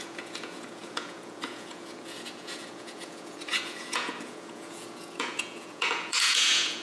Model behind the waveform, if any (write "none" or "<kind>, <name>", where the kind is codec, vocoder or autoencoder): vocoder, Vocos